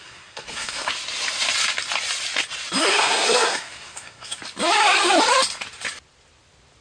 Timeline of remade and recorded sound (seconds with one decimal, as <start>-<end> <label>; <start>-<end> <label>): 0.0-0.9 remade; 0.9-2.8 recorded; 2.8-4.4 remade; 4.4-6.8 recorded